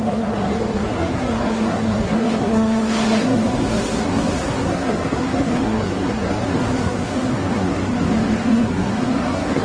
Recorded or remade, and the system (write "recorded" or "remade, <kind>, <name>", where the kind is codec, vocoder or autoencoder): remade, codec, SNAC